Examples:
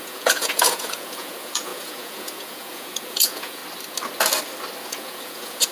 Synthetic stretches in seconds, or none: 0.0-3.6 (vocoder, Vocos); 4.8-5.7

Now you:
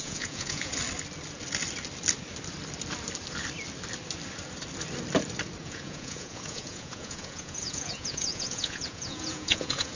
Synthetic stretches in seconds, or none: 0.0-0.7 (vocoder, Vocos); 5.6-10.0

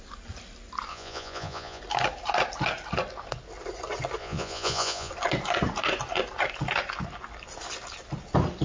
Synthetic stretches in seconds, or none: 0.9-1.8 (vocoder, Vocos); 4.2-5.1

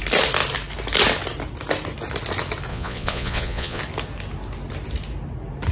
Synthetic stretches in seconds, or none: 2.7-3.8 (vocoder, Vocos)

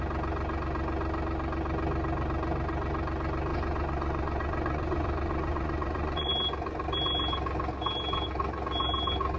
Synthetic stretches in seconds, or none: 3.5-6.3 (vocoder, Vocos)

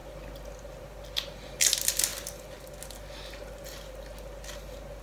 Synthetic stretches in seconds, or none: none